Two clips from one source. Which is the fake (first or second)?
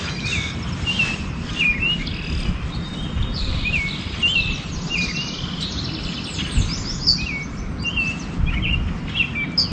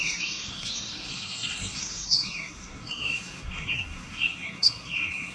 second